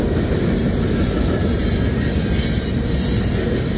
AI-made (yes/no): no